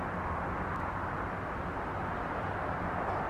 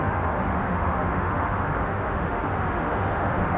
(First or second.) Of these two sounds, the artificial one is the second